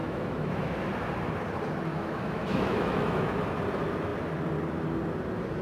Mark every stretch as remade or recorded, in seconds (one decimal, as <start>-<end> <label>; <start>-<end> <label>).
0.0-0.9 remade; 0.9-1.9 recorded; 1.9-3.4 remade; 3.4-5.6 recorded